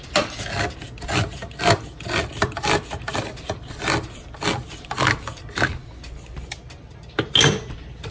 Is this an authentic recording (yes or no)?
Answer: yes